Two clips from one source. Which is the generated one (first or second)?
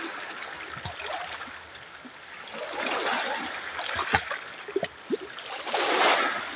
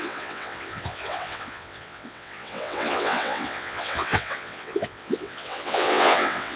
second